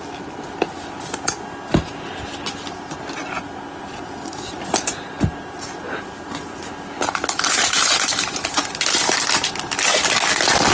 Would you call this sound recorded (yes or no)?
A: yes